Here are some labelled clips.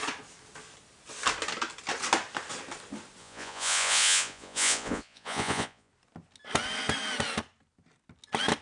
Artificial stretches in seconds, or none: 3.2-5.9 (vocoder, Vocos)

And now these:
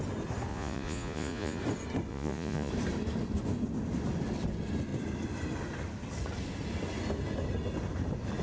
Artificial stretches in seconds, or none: 0.5-1.6 (vocoder, Vocos); 2.1-2.7

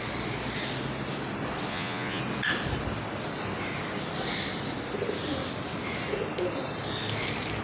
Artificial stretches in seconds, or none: 1.7-2.2 (vocoder, Vocos)

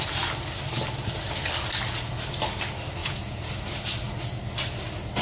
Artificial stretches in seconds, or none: 3.0-3.5 (vocoder, Vocos)

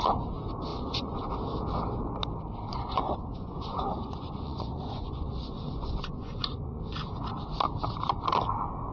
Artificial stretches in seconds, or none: 0.7-1.2 (vocoder, Vocos); 2.7-6.8

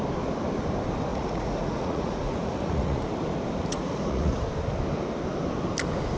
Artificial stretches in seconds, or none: 1.1-3.1 (vocoder, Vocos); 3.7-4.3